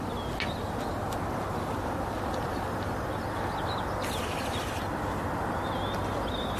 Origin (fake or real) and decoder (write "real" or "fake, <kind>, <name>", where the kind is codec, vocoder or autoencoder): real